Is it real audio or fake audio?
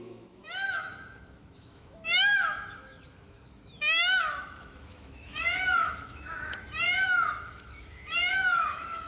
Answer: fake